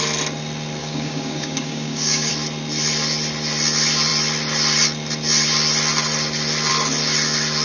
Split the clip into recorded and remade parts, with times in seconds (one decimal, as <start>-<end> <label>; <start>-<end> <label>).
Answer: 0.0-0.8 recorded; 0.8-2.3 remade; 2.3-7.6 recorded